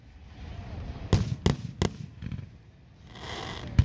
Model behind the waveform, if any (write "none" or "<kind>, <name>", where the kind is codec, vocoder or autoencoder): none